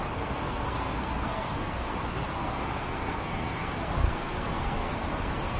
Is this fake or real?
fake